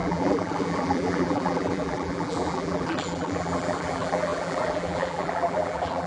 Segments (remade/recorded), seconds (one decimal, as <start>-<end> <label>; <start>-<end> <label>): 0.0-6.1 remade